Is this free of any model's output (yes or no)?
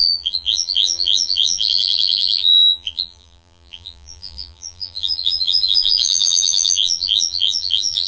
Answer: no